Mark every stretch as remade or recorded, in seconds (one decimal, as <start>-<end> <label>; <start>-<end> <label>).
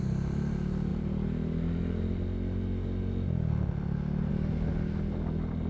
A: 0.0-5.7 recorded